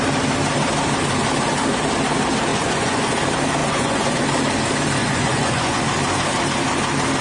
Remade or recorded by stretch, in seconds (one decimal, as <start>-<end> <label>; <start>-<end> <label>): 0.0-2.5 recorded; 2.5-3.1 remade; 3.1-3.6 recorded; 3.6-4.2 remade; 4.2-5.0 recorded; 5.0-5.8 remade; 5.8-7.2 recorded